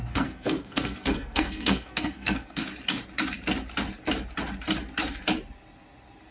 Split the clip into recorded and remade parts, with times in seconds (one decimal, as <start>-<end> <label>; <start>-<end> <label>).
0.0-2.6 remade; 2.6-6.3 recorded